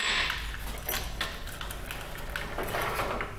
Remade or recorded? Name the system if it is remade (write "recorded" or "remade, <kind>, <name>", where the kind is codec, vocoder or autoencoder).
recorded